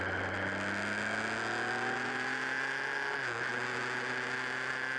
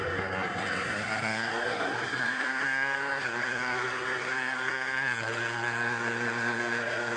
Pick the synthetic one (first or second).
second